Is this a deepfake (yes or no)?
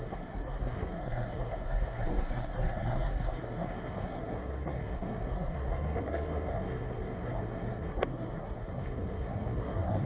yes